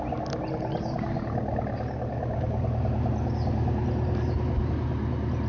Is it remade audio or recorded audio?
recorded